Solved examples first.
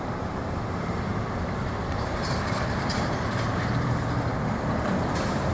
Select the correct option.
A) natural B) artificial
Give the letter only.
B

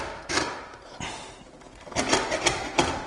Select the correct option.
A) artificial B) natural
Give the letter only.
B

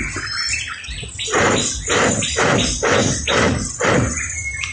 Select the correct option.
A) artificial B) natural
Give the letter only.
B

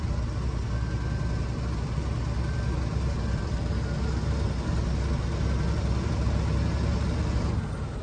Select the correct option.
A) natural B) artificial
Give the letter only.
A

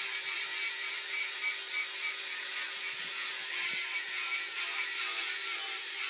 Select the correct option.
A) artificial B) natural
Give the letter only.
A